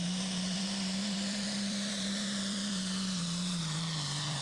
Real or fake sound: fake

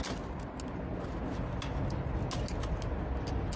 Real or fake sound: real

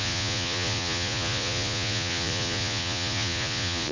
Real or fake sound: fake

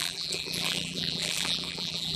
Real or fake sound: fake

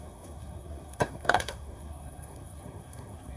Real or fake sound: fake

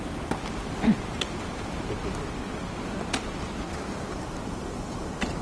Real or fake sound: real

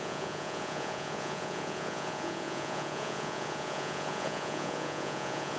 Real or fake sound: fake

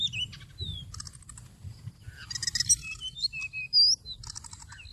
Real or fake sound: real